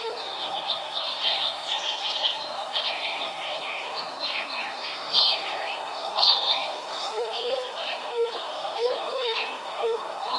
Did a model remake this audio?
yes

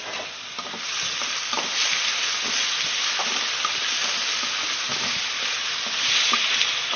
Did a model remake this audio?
no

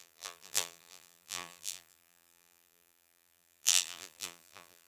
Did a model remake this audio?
yes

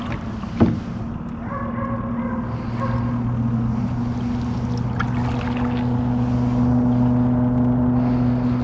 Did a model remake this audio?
no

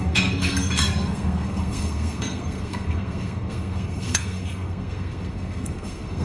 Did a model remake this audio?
yes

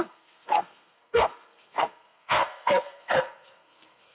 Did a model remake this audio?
yes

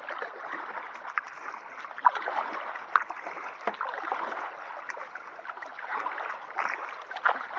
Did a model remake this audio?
no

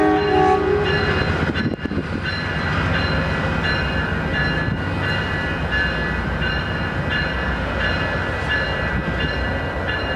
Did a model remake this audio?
no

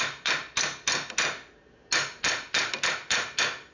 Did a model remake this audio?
no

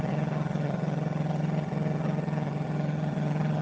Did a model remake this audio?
yes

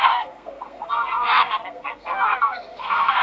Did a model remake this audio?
yes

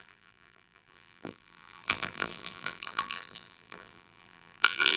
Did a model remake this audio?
yes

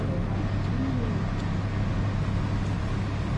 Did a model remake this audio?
no